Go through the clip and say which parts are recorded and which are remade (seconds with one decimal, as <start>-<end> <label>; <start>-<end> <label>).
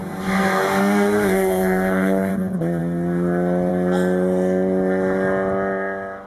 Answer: 0.0-2.3 remade; 2.3-6.3 recorded